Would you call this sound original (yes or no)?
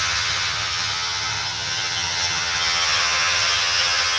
no